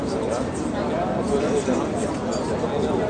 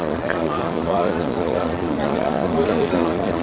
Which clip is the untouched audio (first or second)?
first